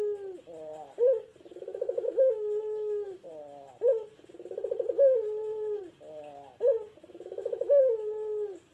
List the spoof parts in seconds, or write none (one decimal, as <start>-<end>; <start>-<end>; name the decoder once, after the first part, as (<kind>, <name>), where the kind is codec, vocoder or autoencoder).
1.5-3.3 (autoencoder, DAC-VAE); 7.0-7.8